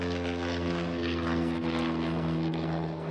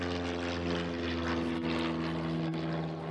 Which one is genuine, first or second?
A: second